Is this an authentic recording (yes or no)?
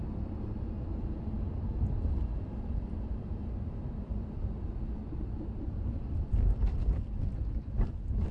no